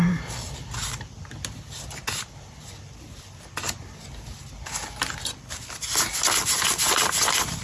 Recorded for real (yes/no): yes